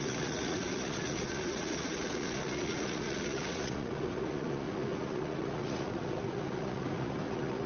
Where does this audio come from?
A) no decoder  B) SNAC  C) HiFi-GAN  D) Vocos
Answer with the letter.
D